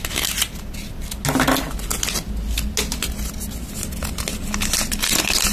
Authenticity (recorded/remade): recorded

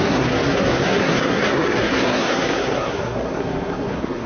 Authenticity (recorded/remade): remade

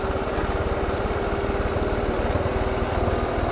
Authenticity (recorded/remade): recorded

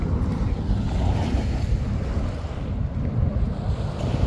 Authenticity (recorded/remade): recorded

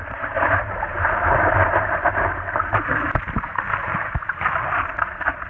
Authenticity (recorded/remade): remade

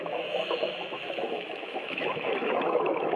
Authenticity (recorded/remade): remade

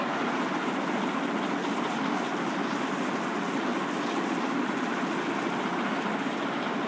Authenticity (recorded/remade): recorded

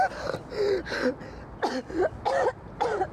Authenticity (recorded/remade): recorded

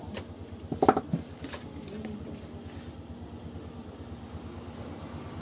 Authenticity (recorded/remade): recorded